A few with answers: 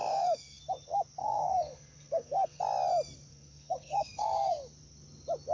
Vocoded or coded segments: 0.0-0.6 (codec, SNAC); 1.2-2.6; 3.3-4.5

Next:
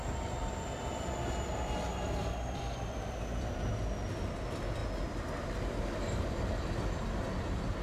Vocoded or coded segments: 0.4-3.7 (vocoder, BigVGAN v2)